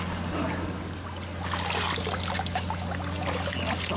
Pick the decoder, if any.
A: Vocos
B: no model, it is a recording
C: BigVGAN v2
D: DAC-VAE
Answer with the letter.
B